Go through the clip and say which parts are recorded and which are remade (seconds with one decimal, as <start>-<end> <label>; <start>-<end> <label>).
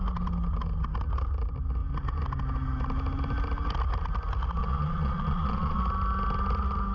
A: 0.0-4.6 recorded; 4.6-5.8 remade; 5.8-6.9 recorded